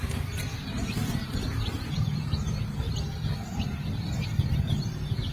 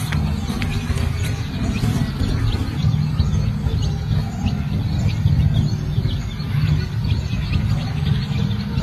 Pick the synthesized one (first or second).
first